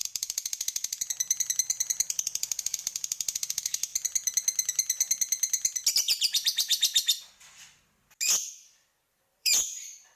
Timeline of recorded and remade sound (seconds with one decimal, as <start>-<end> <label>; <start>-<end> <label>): 0.0-3.9 remade; 3.9-5.9 recorded; 5.9-6.7 remade; 6.7-9.1 recorded; 9.1-10.2 remade